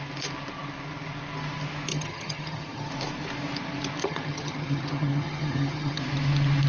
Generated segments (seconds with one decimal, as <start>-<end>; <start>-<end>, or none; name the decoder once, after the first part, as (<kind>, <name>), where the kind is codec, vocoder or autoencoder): 1.9-2.9 (vocoder, HiFi-GAN); 4.0-6.0